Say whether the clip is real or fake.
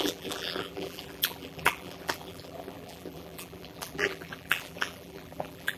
fake